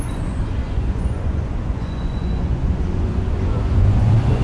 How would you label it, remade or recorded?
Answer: remade